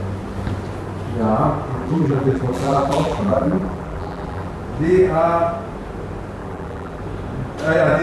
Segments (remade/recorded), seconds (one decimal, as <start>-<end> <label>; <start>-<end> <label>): 0.0-1.7 recorded; 1.7-4.5 remade; 4.5-6.4 recorded; 6.4-7.0 remade; 7.0-8.0 recorded